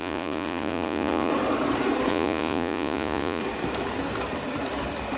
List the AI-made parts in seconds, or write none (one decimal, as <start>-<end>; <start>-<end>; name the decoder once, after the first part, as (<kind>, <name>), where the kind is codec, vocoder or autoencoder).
0.0-1.3 (vocoder, Vocos); 2.1-3.4